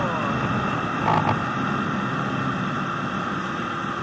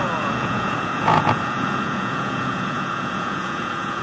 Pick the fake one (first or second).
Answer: second